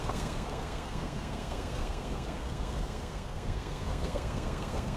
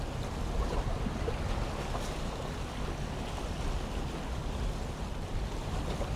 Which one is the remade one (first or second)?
first